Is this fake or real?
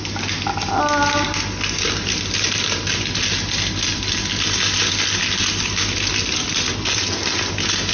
real